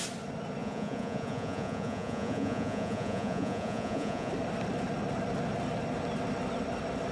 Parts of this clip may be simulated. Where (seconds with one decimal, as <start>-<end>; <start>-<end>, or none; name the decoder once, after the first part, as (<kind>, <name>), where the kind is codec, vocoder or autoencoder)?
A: 0.6-4.3 (vocoder, Vocos)